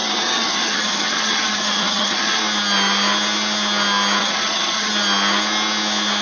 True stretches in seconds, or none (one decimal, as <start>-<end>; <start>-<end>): 2.4-4.2; 4.9-6.2